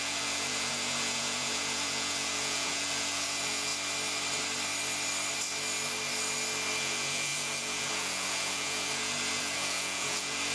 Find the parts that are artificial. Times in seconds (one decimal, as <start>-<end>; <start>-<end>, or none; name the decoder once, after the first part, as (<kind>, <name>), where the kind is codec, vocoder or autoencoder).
0.0-3.7 (vocoder, Vocos); 6.8-10.5